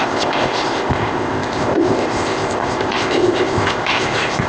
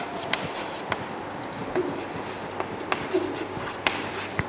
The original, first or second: second